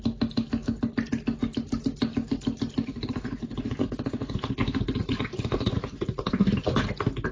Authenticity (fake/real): real